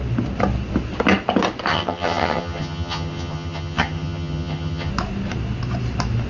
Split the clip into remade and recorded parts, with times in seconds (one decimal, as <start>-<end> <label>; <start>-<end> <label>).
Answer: 0.0-1.7 recorded; 1.7-4.9 remade; 4.9-6.3 recorded